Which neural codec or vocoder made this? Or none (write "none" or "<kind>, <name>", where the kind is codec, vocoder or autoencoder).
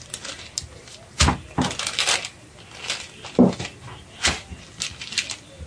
none